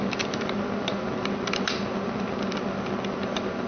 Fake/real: real